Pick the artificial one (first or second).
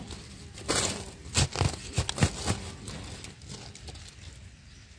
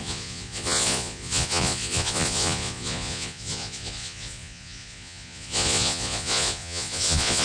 second